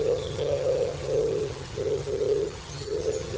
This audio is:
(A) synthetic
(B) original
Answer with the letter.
A